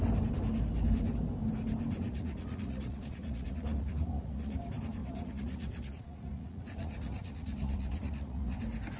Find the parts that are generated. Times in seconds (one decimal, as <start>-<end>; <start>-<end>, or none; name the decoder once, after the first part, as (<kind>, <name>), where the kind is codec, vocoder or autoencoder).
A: 2.1-4.6 (vocoder, Vocos); 5.0-8.6